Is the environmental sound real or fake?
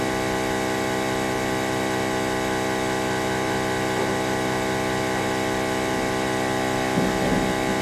real